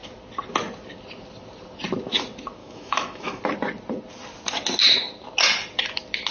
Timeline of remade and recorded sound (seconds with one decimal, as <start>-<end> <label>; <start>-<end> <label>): 0.0-2.6 recorded; 2.6-3.4 remade; 3.4-6.3 recorded